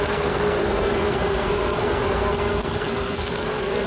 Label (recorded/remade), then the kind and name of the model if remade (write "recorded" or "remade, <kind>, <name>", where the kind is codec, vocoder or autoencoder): remade, codec, SNAC